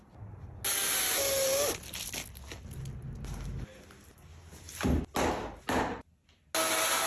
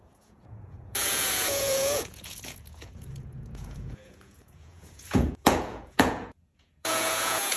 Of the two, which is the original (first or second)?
first